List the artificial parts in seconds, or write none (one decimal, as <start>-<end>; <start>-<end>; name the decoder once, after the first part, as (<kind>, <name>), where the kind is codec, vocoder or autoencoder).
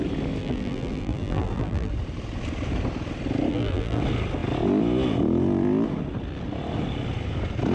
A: 0.4-1.9 (vocoder, BigVGAN v2); 3.5-4.0